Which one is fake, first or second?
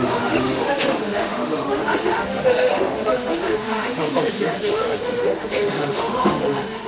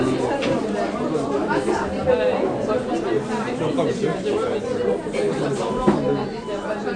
first